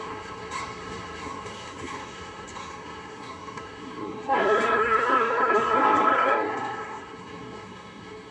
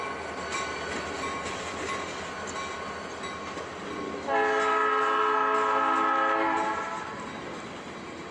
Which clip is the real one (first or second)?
second